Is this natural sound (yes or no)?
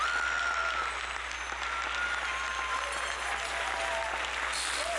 yes